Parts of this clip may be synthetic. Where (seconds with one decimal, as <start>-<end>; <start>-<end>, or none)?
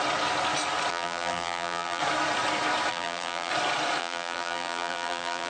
0.9-2.0; 2.9-3.5; 4.0-5.5